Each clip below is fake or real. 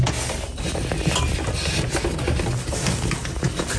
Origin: real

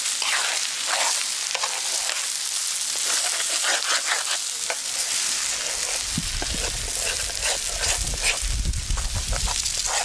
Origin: real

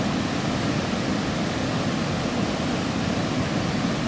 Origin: real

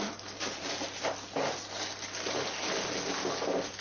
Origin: real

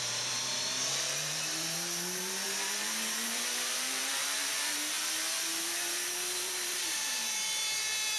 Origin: fake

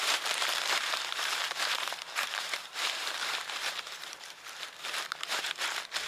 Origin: fake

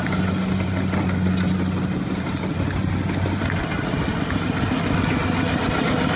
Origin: real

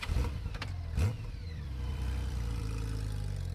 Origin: fake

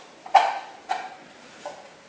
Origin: real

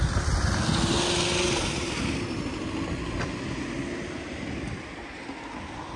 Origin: real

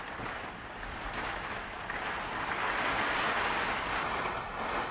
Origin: real